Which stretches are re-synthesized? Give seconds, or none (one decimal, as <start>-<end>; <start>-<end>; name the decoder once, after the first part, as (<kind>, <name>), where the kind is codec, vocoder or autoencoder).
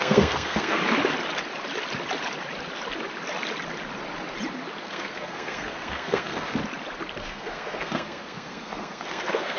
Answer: 0.0-0.8 (codec, SNAC); 4.8-6.6; 7.2-9.6